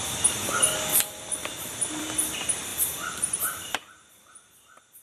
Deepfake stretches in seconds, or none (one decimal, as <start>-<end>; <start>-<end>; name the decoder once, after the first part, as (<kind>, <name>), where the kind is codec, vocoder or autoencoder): 0.9-2.0 (vocoder, BigVGAN v2); 2.7-4.3